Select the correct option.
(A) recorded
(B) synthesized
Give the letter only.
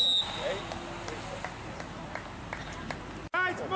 A